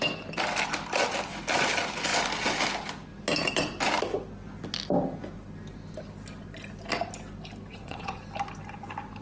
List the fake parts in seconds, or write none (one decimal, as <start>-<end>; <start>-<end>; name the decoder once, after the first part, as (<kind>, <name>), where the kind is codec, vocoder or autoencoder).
7.7-8.2 (vocoder, WaveNeXt)